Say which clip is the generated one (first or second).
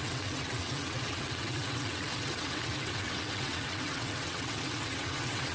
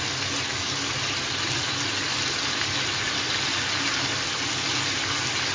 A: first